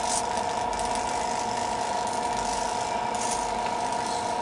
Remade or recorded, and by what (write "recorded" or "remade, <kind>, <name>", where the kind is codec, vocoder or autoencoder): recorded